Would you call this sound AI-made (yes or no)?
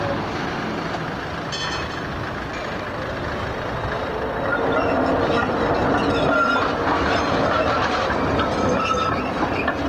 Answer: no